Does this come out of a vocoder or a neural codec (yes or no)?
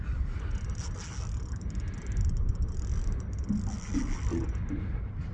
no